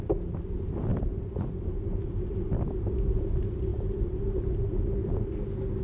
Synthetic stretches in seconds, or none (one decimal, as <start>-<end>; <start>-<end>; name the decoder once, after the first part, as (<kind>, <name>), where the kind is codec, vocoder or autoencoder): 0.9-3.2 (vocoder, BigVGAN v2); 3.7-4.2